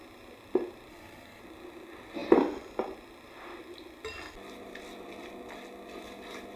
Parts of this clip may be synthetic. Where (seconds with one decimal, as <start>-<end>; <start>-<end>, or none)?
0.9-1.4